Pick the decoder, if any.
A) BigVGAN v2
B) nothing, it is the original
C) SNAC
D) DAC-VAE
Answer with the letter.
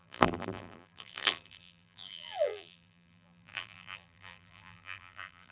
A